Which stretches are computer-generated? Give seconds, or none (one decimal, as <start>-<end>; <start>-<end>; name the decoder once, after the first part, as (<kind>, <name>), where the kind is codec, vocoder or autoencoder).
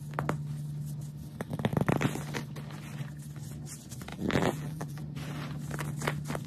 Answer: 4.1-5.0 (vocoder, BigVGAN v2)